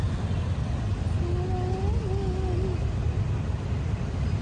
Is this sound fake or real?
real